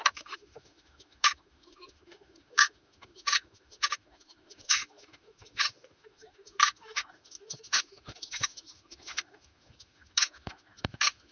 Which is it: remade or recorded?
remade